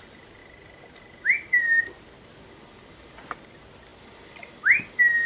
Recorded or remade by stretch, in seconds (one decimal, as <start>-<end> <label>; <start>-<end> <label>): 0.0-0.4 recorded; 0.4-1.8 remade; 1.8-5.3 recorded